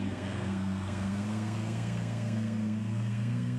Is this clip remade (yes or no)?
yes